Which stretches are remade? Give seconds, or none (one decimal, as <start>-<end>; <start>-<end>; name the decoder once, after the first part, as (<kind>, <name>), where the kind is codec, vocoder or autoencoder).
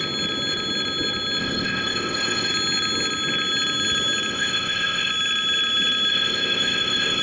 1.4-2.5 (codec, ZipCodec); 4.3-5.1; 6.1-7.2